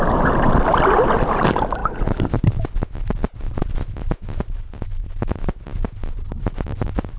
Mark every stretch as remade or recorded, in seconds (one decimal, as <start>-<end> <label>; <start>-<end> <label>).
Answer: 0.0-7.2 recorded